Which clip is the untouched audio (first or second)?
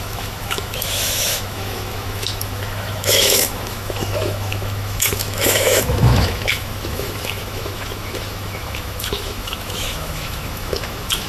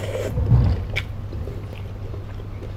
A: second